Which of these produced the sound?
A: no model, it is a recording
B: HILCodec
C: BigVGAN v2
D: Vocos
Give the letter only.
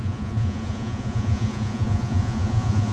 D